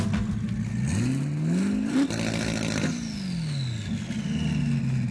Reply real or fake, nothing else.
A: real